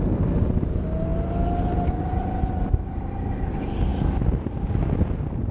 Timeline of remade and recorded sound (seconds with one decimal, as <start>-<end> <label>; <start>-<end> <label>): 0.0-5.5 recorded